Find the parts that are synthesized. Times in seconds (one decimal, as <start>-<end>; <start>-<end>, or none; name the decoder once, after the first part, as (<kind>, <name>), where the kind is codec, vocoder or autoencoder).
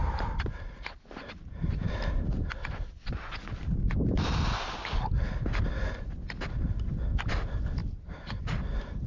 0.0-1.7 (vocoder, BigVGAN v2)